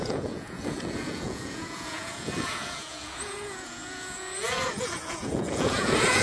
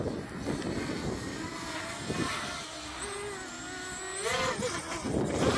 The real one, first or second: second